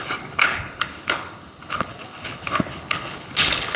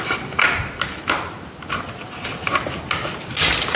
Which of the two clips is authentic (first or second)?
second